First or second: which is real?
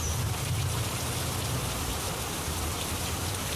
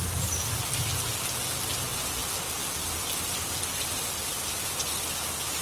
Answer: second